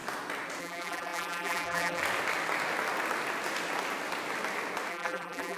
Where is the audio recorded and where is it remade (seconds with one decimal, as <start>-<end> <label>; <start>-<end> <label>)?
0.0-0.6 recorded; 0.6-2.0 remade; 2.0-4.9 recorded; 4.9-5.6 remade